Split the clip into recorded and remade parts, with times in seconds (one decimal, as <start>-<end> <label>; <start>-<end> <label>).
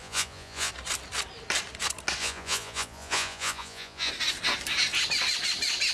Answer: 0.0-0.7 remade; 0.7-2.2 recorded; 2.2-4.1 remade; 4.1-5.9 recorded